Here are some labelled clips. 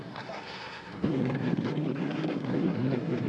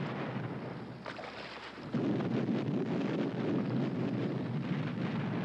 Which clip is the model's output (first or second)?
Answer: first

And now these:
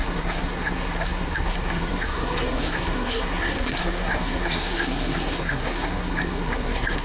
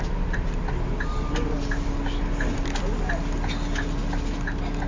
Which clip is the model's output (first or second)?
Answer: first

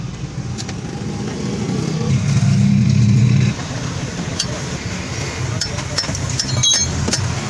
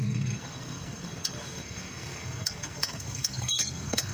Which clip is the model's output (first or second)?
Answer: second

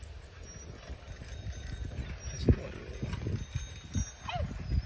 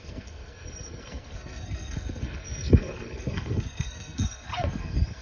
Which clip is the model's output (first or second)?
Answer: second